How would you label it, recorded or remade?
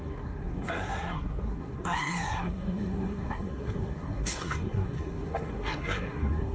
remade